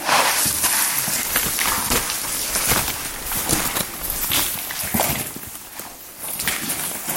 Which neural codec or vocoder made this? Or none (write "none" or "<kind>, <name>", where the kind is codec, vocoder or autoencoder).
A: none